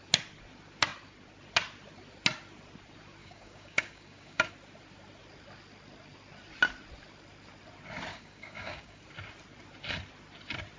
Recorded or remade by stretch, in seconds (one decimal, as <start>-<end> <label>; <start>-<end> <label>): 0.0-3.2 recorded; 3.2-4.5 remade; 4.5-8.1 recorded; 8.1-9.0 remade; 9.0-10.8 recorded